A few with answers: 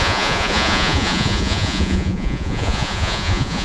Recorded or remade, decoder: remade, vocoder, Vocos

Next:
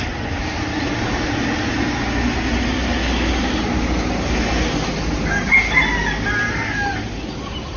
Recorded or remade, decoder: recorded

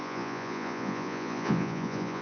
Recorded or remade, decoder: remade, vocoder, Vocos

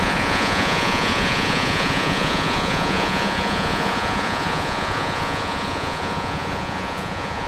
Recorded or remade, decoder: remade, vocoder, Vocos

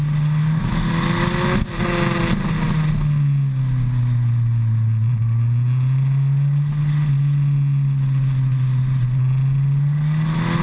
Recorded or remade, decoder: recorded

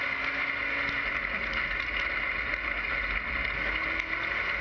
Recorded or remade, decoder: recorded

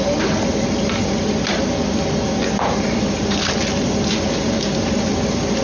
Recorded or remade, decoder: recorded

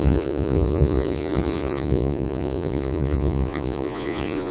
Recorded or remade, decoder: remade, vocoder, Vocos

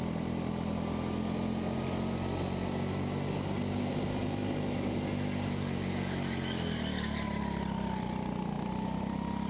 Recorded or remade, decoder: recorded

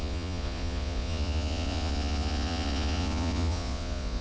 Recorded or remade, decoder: remade, vocoder, Vocos